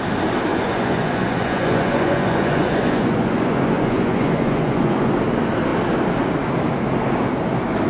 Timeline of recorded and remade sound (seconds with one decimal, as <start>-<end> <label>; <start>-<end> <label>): 0.0-0.5 recorded; 0.5-5.1 remade; 5.1-7.9 recorded